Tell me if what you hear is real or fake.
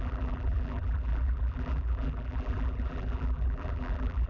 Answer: fake